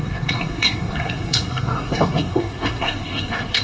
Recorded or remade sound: remade